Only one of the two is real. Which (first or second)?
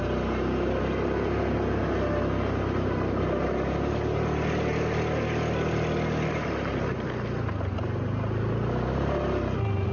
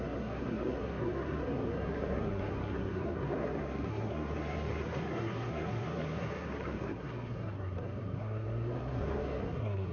first